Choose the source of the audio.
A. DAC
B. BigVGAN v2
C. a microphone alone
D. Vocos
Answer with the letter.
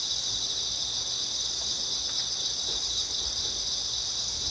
C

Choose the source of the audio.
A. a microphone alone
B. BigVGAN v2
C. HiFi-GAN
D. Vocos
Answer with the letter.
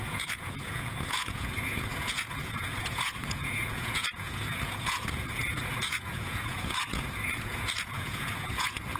D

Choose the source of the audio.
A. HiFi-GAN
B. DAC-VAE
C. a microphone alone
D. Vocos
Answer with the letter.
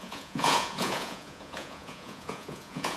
D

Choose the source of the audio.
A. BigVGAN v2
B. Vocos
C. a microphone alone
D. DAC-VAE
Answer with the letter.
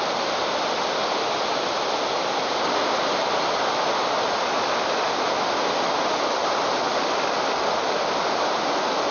C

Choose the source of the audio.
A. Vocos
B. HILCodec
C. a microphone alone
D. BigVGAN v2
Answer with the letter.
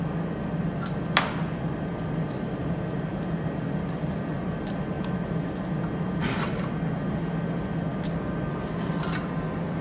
C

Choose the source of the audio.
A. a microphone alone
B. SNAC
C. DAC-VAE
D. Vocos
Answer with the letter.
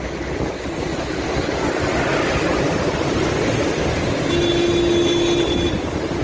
A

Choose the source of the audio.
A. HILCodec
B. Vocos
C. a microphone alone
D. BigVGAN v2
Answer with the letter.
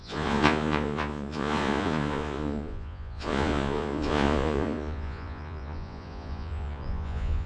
B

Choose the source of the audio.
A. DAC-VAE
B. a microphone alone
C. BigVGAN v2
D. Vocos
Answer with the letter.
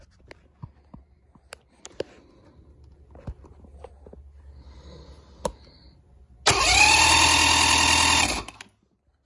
B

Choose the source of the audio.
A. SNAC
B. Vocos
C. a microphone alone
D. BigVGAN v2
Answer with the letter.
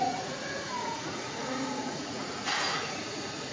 B